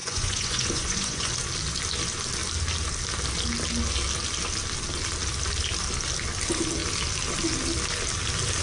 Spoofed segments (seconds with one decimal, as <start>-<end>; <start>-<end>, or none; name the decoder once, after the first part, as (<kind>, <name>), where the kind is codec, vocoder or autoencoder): 0.0-1.3 (vocoder, Vocos)